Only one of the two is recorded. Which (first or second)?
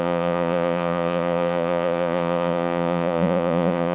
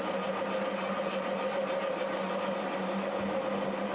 second